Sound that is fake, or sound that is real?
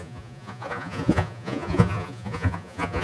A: fake